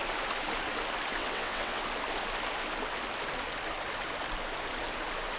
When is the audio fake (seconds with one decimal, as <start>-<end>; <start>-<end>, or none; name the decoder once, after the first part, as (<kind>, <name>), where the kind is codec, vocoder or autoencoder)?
1.2-1.8 (vocoder, WaveNeXt)